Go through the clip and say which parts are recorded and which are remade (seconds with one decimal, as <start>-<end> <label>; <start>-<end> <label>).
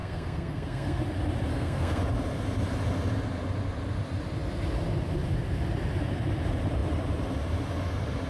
0.0-1.0 remade; 1.0-1.5 recorded; 1.5-2.0 remade; 2.0-8.3 recorded